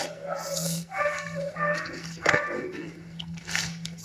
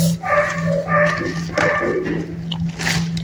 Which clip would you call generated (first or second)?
first